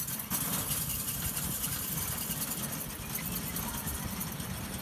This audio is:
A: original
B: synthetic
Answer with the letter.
A